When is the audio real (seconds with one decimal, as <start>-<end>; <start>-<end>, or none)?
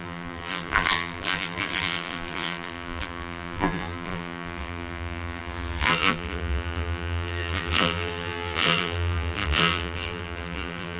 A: none